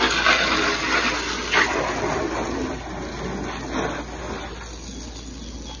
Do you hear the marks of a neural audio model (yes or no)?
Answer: no